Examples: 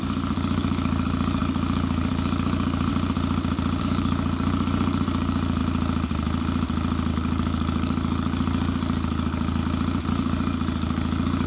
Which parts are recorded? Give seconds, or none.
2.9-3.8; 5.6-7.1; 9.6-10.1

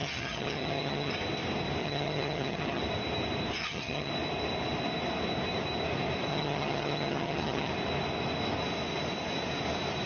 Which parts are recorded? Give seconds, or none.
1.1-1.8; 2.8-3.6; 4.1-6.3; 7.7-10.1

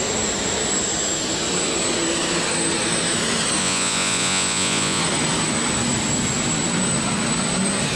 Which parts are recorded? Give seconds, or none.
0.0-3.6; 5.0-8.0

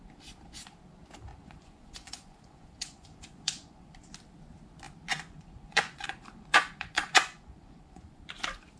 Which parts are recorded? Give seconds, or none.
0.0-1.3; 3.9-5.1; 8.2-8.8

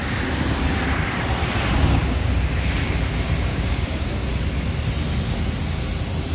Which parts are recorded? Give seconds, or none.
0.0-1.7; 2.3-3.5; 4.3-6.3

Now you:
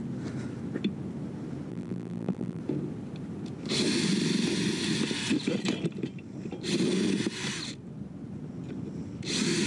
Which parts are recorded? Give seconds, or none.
0.0-1.7; 2.6-9.7